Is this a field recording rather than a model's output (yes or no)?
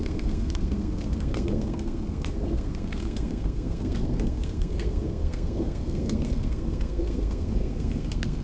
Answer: no